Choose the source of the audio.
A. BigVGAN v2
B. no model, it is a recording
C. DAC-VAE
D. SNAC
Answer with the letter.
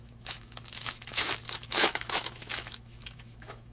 C